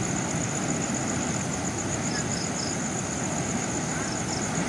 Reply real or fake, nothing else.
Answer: real